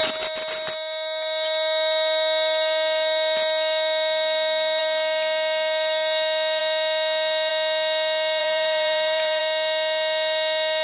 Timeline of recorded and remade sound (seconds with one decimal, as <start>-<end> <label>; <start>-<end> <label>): 0.0-8.4 recorded; 8.4-9.4 remade; 9.4-10.8 recorded